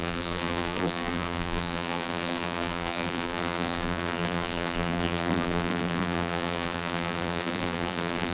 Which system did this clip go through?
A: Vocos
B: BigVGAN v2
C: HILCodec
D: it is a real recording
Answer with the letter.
B